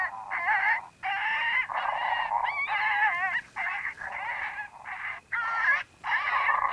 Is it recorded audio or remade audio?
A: recorded